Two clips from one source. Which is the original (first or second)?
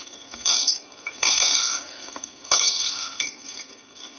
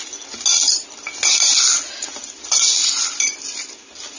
second